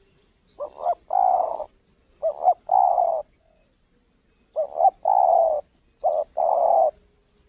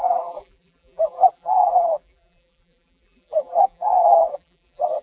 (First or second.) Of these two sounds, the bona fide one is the first